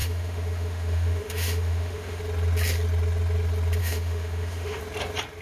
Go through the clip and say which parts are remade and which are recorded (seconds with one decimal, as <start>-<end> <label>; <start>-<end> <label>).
0.0-2.2 remade; 2.2-3.8 recorded; 3.8-4.8 remade; 4.8-5.4 recorded

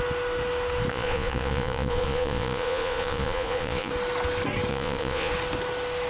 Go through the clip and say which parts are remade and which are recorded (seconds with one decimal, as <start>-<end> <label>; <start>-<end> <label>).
0.0-0.9 recorded; 0.9-3.9 remade; 3.9-4.7 recorded; 4.7-5.3 remade; 5.3-6.1 recorded

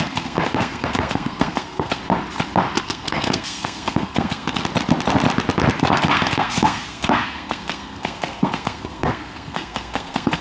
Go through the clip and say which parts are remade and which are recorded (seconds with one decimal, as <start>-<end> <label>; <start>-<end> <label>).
0.0-2.0 remade; 2.0-2.8 recorded; 2.8-4.6 remade; 4.6-5.8 recorded; 5.8-10.4 remade

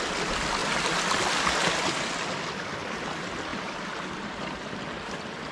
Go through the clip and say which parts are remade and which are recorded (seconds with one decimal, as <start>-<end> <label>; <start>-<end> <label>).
0.0-3.5 recorded; 3.5-4.8 remade; 4.8-5.5 recorded

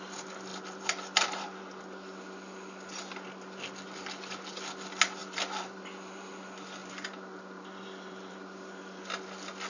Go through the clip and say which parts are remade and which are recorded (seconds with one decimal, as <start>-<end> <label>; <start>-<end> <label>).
0.0-0.5 recorded; 0.5-1.6 remade; 1.6-5.2 recorded; 5.2-6.3 remade; 6.3-6.8 recorded; 6.8-9.0 remade; 9.0-9.7 recorded

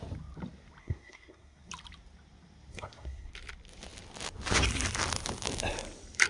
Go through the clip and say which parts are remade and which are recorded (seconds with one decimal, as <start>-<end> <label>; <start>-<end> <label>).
0.0-0.8 recorded; 0.8-1.7 remade; 1.7-2.7 recorded; 2.7-3.3 remade; 3.3-6.3 recorded

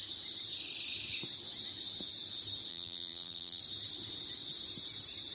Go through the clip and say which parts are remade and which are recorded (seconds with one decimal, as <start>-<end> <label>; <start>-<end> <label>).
0.0-2.7 recorded; 2.7-3.6 remade; 3.6-5.3 recorded